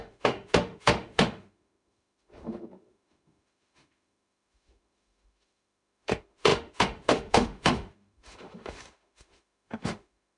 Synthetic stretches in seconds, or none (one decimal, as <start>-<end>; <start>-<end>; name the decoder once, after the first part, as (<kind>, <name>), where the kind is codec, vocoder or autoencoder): 0.0-10.4 (autoencoder, DAC-VAE)